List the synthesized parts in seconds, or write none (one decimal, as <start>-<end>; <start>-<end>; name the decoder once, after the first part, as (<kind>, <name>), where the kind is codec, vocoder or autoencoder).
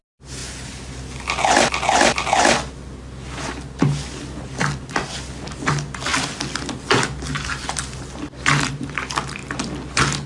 none